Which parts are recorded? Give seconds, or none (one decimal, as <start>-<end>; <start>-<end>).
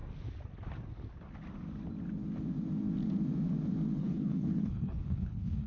0.0-4.0